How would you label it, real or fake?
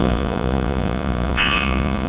fake